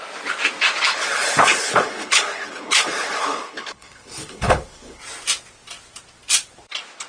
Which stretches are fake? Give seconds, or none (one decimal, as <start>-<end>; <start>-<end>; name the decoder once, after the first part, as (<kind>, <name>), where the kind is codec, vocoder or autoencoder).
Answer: 0.9-5.0 (codec, HILCodec)